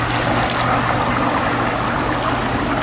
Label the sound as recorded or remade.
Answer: recorded